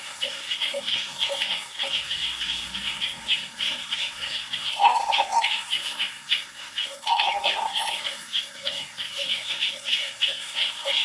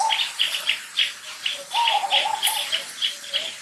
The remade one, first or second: first